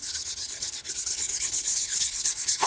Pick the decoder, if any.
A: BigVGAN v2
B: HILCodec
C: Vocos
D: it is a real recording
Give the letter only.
B